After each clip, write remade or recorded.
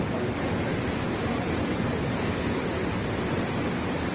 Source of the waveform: recorded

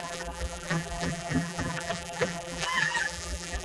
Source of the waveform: remade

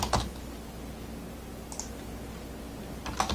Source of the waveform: recorded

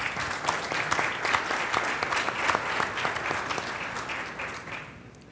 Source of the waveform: recorded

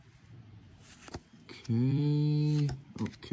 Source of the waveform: remade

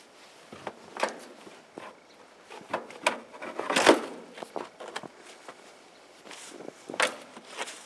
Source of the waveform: recorded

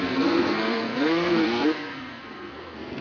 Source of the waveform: remade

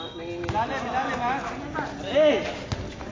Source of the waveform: recorded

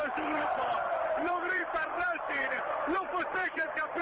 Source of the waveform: remade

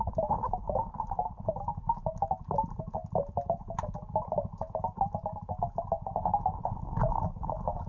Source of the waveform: recorded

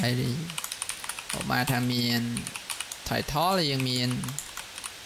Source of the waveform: recorded